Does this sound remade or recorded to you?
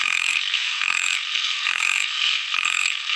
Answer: remade